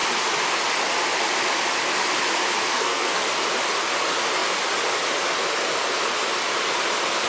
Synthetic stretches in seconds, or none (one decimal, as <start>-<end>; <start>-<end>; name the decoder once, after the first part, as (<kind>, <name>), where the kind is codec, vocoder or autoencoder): 2.7-3.2 (codec, SNAC)